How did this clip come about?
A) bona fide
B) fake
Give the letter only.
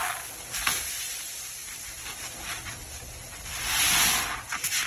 A